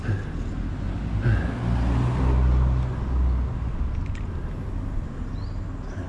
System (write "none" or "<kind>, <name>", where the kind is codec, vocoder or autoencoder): none